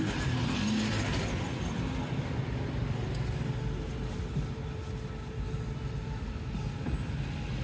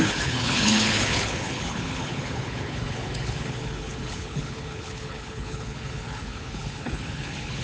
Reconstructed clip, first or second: second